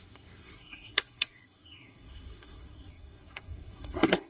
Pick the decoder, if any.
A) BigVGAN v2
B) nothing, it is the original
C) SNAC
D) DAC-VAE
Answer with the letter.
C